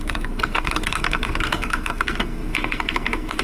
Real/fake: fake